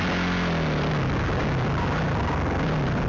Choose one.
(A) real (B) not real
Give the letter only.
A